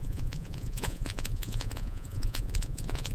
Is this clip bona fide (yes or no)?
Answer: no